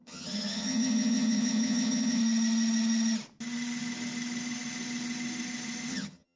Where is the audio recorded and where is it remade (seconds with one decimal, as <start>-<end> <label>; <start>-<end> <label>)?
0.0-2.2 remade; 2.2-5.9 recorded; 5.9-6.4 remade

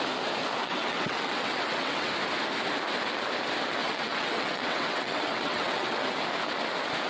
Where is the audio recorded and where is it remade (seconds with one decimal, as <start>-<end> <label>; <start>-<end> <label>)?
0.0-0.6 recorded; 0.6-2.1 remade; 2.1-3.8 recorded; 3.8-6.1 remade; 6.1-7.1 recorded

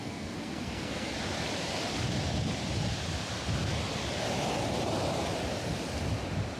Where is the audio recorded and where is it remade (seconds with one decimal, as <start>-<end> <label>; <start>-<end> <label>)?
0.0-1.1 remade; 1.1-6.6 recorded

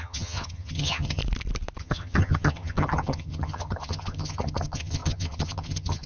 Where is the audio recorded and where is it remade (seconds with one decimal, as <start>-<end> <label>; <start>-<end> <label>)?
0.0-1.2 remade; 1.2-1.8 recorded; 1.8-6.1 remade

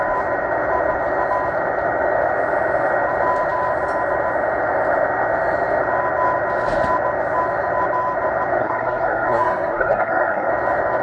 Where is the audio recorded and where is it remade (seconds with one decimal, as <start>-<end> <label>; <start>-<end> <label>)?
0.0-8.6 recorded; 8.6-10.5 remade; 10.5-11.0 recorded

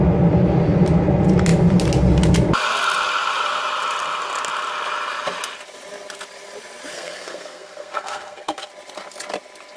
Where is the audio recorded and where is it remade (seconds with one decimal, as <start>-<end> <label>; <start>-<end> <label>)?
0.0-6.9 recorded; 6.9-8.7 remade; 8.7-9.8 recorded